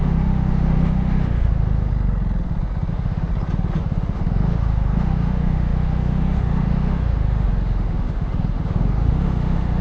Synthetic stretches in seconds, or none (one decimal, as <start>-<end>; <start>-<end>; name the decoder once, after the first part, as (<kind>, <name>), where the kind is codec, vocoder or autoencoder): 0.0-1.9 (autoencoder, DAC-VAE); 2.9-3.3; 3.8-9.8